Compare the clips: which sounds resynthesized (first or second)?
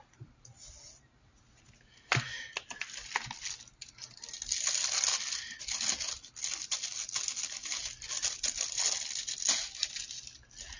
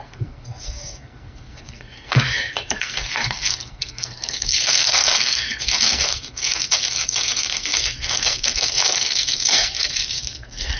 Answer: second